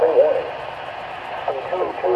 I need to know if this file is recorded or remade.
recorded